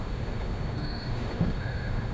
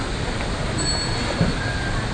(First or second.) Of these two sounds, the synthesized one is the first